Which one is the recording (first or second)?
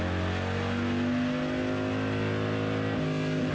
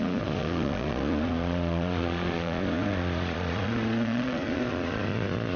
first